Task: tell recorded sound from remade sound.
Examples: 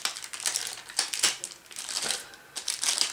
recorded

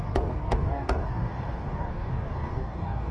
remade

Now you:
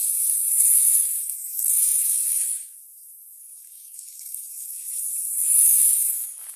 remade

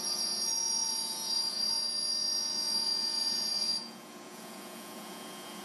remade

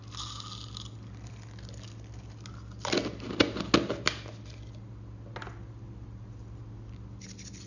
recorded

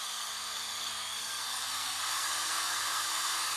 remade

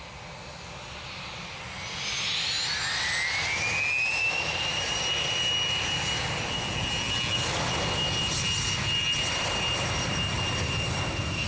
recorded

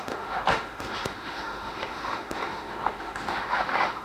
remade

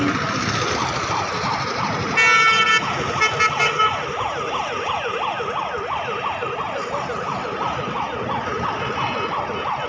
recorded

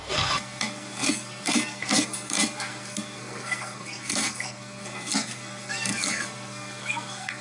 remade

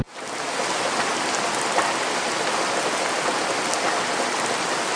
recorded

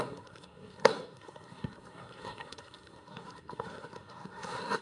remade